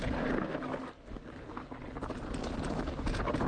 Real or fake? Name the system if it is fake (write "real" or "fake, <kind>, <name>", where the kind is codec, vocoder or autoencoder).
real